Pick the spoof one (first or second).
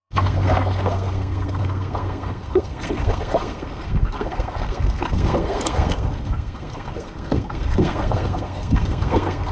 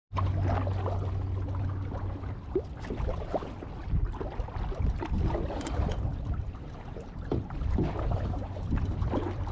first